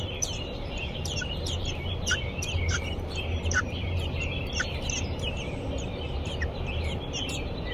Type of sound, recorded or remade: remade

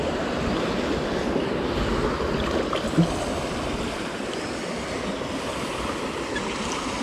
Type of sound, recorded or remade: recorded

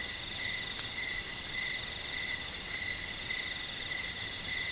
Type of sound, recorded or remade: recorded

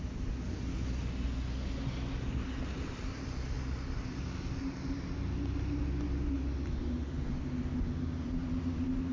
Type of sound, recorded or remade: recorded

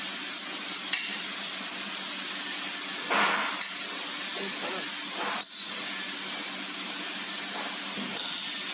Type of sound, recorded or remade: recorded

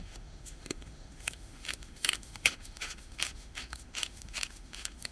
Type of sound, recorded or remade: remade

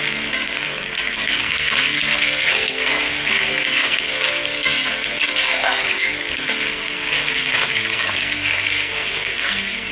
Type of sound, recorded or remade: remade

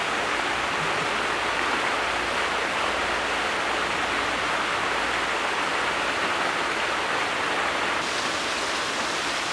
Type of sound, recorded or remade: recorded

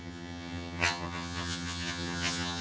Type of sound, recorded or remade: remade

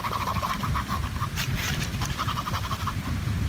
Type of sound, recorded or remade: remade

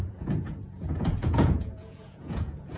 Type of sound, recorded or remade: remade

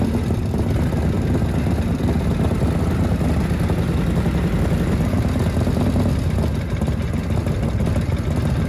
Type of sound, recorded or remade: recorded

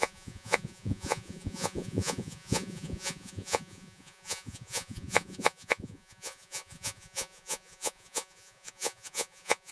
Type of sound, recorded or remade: remade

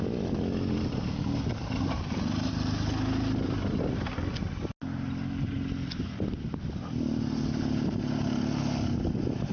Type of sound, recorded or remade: recorded